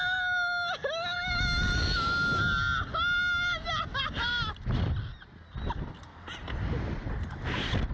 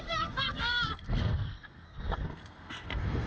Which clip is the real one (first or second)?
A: first